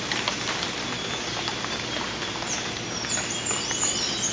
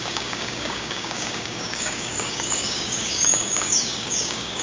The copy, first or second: second